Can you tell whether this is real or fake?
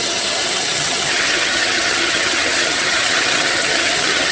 fake